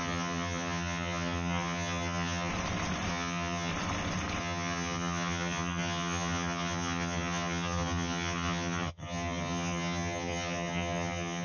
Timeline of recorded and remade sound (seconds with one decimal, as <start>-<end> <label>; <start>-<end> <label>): 0.0-2.5 remade; 2.5-3.1 recorded; 3.1-3.7 remade; 3.7-4.4 recorded; 4.4-11.4 remade